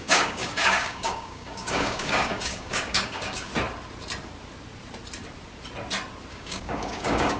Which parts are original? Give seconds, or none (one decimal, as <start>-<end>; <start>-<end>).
3.5-6.3

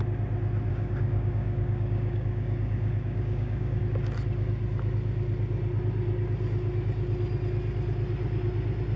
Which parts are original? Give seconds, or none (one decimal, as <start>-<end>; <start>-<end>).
0.0-0.7; 3.8-9.0

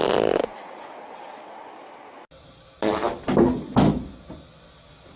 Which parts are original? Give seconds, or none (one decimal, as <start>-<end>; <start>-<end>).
0.0-5.2

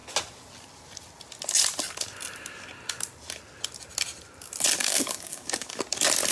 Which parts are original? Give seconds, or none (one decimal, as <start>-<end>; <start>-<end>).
0.0-4.8; 5.8-6.3

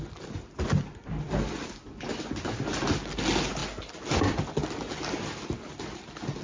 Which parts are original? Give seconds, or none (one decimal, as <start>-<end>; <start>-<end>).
0.0-6.4

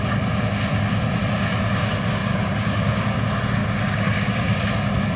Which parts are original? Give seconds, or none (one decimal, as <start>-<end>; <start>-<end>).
0.0-2.2; 3.2-3.6; 4.6-5.2

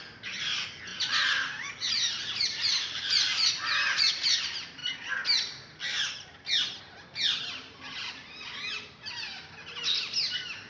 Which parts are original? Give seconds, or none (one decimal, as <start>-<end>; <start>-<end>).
0.0-10.7

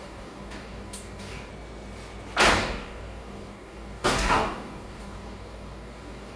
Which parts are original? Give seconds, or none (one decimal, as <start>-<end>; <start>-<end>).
1.5-2.5